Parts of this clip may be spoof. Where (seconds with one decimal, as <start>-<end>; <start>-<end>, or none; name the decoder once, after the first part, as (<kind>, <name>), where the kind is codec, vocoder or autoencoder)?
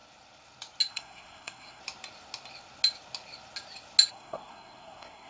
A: 0.9-1.8 (codec, SNAC); 4.1-5.3